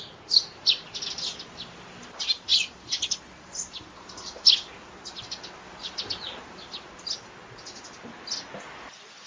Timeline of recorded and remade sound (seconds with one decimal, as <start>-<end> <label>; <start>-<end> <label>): 0.0-9.3 recorded